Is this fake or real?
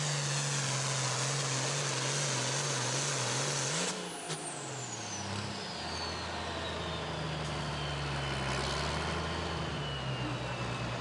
real